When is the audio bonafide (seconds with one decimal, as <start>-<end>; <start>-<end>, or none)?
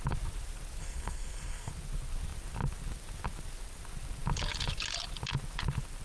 0.0-0.8; 1.7-6.0